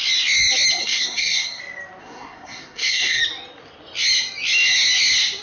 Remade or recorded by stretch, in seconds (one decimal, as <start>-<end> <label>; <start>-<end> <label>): 0.0-0.8 recorded; 0.8-1.6 remade; 1.6-2.0 recorded; 2.0-3.2 remade; 3.2-5.4 recorded